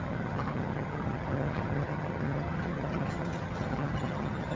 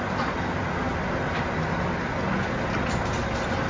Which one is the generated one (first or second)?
first